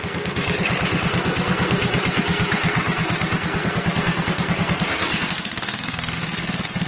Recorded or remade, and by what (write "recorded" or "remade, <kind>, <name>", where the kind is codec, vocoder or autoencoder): remade, codec, SNAC